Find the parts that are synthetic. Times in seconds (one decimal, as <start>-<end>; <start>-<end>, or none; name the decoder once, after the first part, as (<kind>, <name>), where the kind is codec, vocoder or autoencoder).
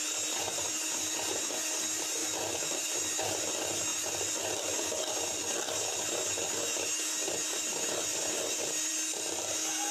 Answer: 2.2-2.8 (vocoder, BigVGAN v2); 3.9-6.0